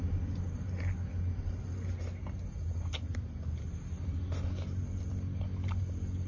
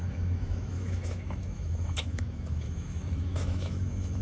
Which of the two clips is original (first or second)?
first